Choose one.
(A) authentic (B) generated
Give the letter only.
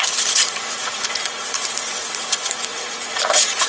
B